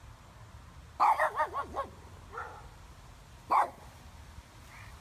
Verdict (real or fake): real